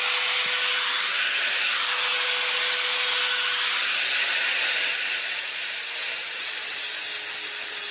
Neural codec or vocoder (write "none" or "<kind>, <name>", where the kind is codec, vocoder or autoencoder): none